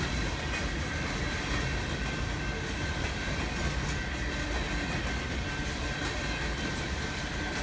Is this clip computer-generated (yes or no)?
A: no